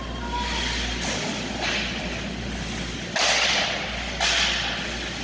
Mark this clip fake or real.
real